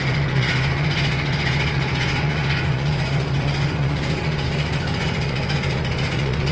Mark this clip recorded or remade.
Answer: remade